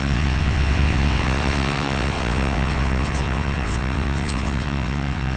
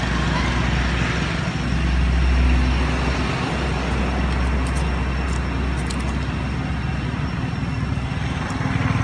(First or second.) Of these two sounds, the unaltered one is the second